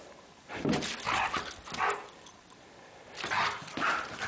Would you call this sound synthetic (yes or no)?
no